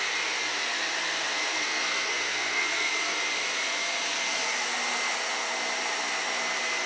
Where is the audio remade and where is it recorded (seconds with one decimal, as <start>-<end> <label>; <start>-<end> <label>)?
0.0-1.5 recorded; 1.5-2.9 remade; 2.9-6.9 recorded